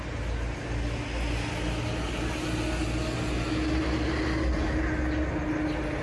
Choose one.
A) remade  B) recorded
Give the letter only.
B